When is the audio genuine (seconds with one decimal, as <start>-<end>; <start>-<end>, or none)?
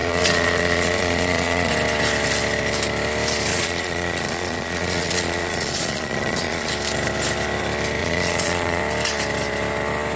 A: 1.7-3.5; 6.7-8.0; 8.8-10.2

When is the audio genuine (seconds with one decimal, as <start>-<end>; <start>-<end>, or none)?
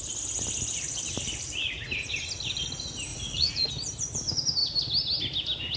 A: 0.0-3.1; 3.7-5.8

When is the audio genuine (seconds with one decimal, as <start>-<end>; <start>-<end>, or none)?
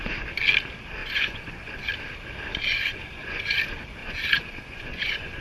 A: 0.0-1.0; 1.9-2.7; 3.6-4.0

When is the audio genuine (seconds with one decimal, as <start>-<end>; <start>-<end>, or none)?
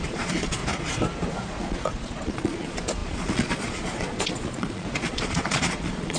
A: 0.6-1.3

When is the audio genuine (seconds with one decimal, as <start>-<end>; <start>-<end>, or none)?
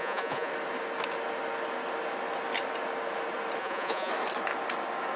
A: 0.5-3.6; 4.1-5.2